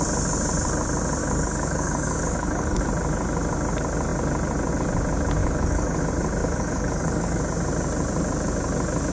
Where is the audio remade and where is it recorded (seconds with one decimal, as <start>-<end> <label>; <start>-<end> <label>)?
0.0-1.2 recorded; 1.2-2.8 remade; 2.8-5.4 recorded; 5.4-6.0 remade; 6.0-6.4 recorded; 6.4-7.4 remade; 7.4-9.1 recorded